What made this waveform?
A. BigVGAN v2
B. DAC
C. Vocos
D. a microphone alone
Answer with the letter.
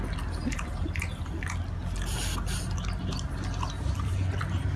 D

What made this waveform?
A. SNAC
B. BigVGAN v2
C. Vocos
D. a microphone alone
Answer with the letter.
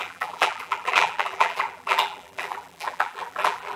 B